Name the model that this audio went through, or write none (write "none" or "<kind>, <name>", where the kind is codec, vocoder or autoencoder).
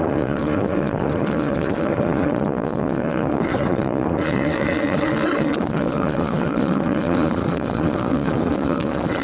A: vocoder, Vocos